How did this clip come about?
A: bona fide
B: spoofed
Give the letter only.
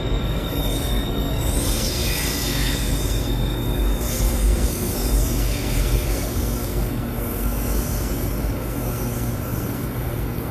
B